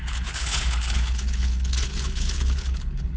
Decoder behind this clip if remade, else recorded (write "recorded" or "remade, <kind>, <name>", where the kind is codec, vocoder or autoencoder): remade, codec, HILCodec